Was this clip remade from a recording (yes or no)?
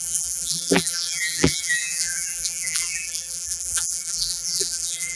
yes